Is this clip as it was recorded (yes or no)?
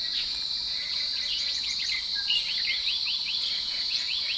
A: yes